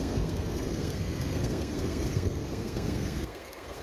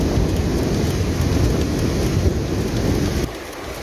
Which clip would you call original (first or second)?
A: second